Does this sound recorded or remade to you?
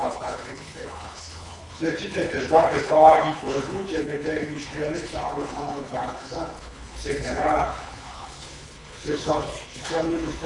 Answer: remade